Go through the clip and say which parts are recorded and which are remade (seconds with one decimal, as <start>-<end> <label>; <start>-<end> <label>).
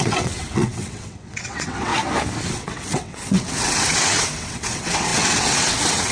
0.0-1.9 remade; 1.9-2.5 recorded; 2.5-6.1 remade